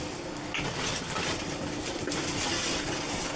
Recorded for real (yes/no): yes